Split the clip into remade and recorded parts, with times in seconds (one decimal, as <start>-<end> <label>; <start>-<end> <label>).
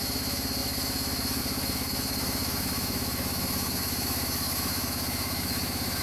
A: 0.0-6.0 remade